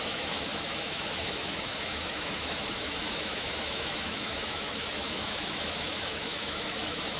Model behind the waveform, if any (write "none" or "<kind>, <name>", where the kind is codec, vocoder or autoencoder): autoencoder, DAC-VAE